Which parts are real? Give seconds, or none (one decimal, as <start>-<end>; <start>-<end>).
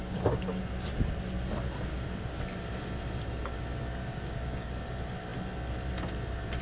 0.6-1.9; 2.4-4.0; 4.7-6.6